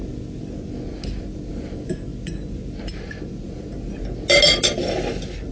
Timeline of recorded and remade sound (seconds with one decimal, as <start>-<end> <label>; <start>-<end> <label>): 0.0-5.5 recorded